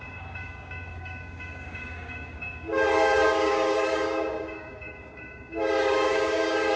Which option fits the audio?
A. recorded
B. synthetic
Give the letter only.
B